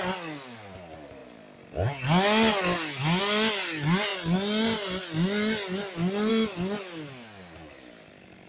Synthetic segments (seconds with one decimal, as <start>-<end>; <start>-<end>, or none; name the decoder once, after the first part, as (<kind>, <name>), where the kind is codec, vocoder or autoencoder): none